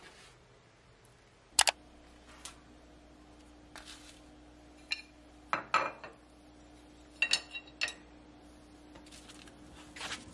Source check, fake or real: real